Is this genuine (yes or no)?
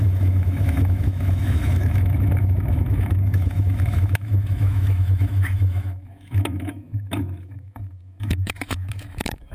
no